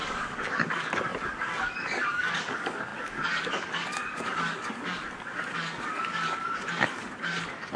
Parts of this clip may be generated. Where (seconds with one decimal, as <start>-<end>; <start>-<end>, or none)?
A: 0.0-7.8